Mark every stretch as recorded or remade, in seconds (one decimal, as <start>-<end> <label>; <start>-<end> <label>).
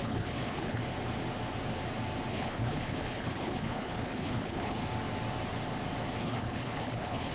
0.0-0.8 remade; 0.8-2.3 recorded; 2.3-4.8 remade; 4.8-6.2 recorded; 6.2-7.3 remade